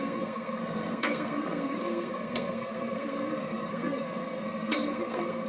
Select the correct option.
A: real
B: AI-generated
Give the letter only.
B